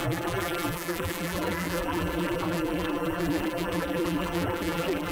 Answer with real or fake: fake